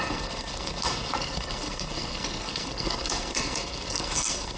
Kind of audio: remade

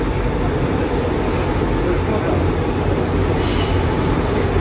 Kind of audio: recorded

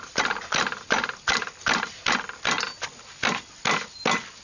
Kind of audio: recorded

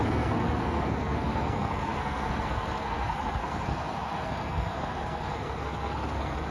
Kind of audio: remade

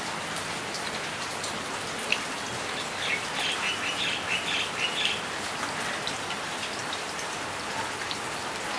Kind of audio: recorded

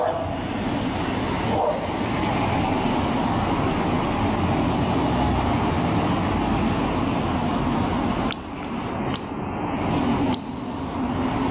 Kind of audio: recorded